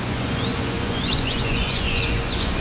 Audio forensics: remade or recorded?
remade